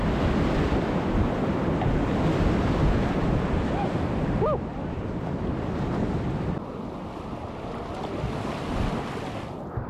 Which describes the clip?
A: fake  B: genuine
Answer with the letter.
B